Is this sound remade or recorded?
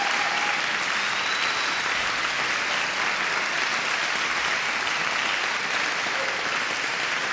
recorded